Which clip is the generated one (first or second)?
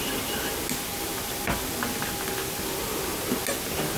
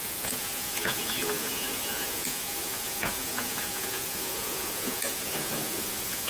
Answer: second